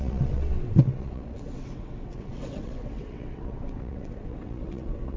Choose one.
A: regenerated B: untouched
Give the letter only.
A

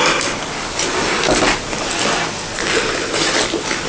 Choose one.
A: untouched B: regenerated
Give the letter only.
A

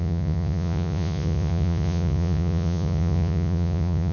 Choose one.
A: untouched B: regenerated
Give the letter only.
B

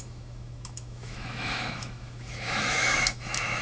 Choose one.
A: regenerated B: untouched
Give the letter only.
A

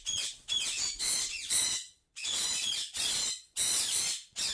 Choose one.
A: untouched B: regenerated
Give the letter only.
B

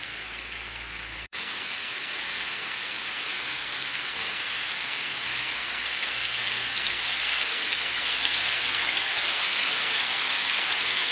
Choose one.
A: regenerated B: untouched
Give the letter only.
A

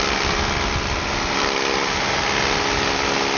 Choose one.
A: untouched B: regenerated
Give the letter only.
A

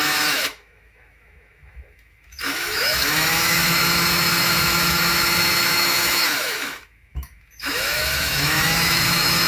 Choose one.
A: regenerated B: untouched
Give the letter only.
A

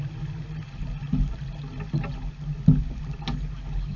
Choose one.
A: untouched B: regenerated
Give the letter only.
A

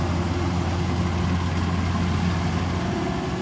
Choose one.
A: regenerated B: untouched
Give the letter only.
B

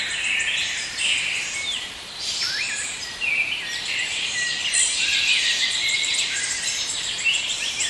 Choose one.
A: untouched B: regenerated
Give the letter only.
B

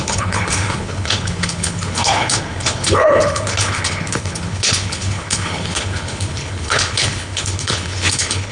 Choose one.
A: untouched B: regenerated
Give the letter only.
B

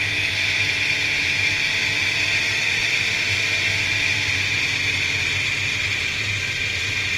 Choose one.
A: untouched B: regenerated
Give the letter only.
A